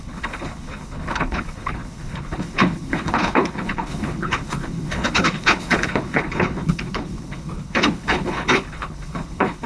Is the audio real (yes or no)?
no